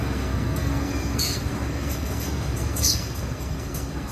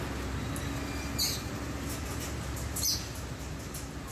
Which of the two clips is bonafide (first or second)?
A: second